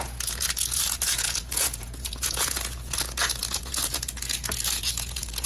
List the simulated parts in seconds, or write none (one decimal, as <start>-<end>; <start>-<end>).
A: 0.0-5.5